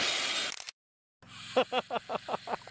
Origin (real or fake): real